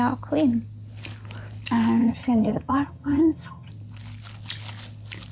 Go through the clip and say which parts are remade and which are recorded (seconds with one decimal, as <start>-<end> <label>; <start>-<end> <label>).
0.0-2.0 recorded; 2.0-3.7 remade; 3.7-5.3 recorded